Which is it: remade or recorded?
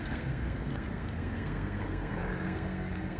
remade